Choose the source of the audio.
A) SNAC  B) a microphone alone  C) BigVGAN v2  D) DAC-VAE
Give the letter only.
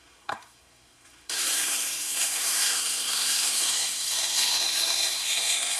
A